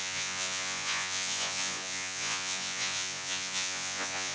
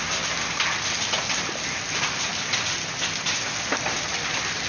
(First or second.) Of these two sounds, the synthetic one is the first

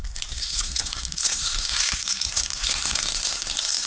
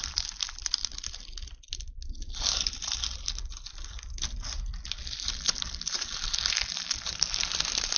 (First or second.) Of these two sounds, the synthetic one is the first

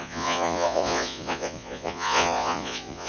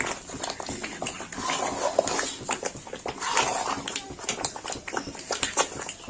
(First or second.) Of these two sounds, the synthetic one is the first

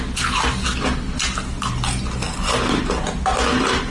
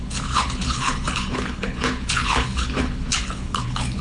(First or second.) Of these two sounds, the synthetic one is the second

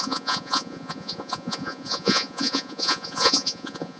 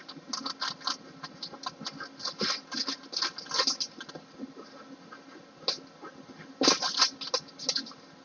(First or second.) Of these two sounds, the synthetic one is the first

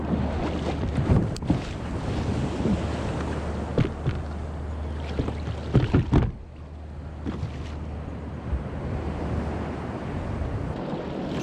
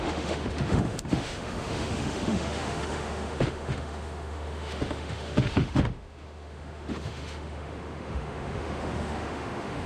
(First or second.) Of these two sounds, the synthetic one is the second